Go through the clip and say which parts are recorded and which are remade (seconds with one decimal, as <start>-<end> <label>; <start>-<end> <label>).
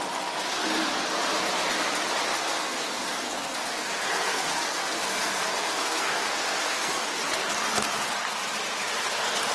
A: 0.0-2.3 recorded; 2.3-7.0 remade; 7.0-9.5 recorded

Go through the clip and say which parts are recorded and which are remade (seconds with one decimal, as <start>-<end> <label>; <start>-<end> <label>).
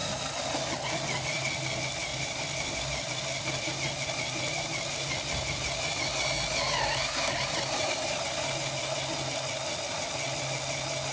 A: 0.0-0.7 remade; 0.7-2.1 recorded; 2.1-2.8 remade; 2.8-4.7 recorded; 4.7-6.1 remade; 6.1-11.1 recorded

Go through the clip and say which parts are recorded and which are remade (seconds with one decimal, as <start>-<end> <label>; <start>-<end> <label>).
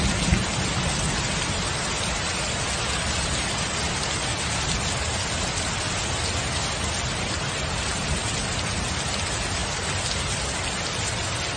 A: 0.0-11.6 recorded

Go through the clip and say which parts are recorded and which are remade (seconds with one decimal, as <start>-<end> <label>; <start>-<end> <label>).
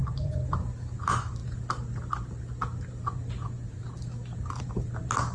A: 0.0-0.6 remade; 0.6-5.3 recorded